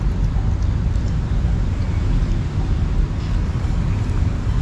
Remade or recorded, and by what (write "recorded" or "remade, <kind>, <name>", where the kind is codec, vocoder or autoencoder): recorded